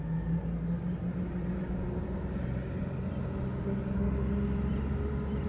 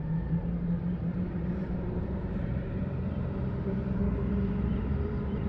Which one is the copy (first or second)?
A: second